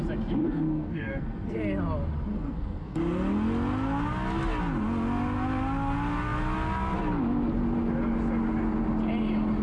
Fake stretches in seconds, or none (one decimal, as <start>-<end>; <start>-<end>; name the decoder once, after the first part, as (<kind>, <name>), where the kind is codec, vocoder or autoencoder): 0.4-1.6 (codec, SNAC); 2.3-3.0